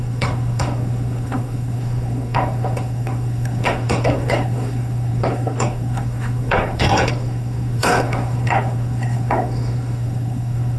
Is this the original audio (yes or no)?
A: no